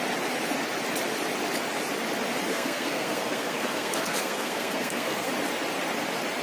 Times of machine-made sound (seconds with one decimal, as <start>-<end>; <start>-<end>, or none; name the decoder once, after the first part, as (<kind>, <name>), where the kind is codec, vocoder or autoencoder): 2.5-5.3 (codec, SNAC)